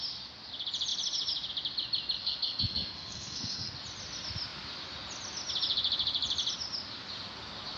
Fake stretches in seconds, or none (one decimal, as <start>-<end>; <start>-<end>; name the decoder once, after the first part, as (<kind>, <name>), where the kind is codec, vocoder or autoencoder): 2.2-3.7 (codec, SNAC)